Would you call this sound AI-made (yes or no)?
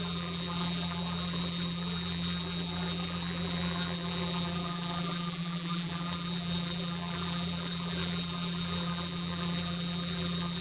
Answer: yes